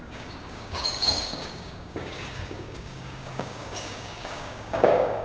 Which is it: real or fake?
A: fake